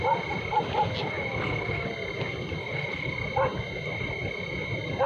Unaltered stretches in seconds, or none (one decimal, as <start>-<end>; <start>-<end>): 0.0-1.0; 1.9-2.6; 3.1-5.1